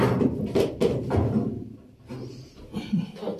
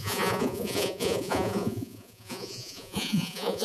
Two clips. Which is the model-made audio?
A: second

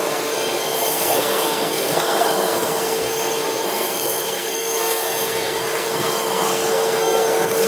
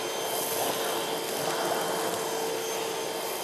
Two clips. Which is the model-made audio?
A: first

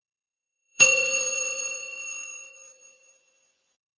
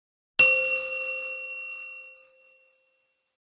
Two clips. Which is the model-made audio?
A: first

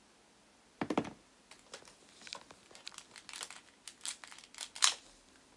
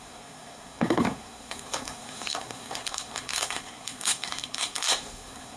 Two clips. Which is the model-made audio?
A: second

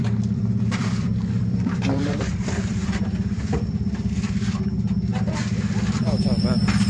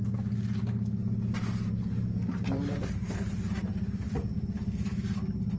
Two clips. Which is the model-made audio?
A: first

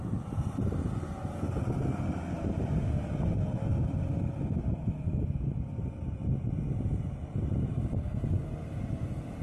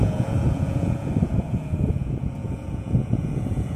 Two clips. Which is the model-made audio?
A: second